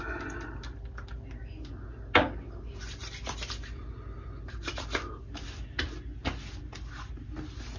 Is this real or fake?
real